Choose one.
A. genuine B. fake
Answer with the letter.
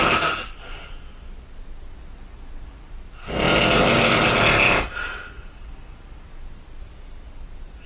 A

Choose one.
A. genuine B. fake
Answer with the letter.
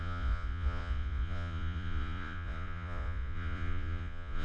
B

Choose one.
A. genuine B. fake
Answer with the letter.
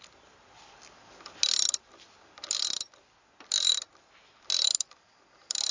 A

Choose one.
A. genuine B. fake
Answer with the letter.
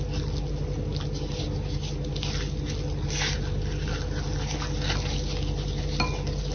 A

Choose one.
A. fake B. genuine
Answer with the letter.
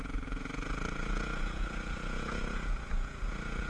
A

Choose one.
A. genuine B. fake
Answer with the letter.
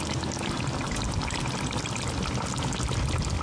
A